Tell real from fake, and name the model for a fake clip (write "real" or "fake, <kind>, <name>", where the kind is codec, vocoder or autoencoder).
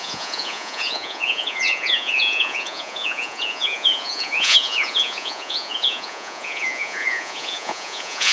fake, vocoder, Vocos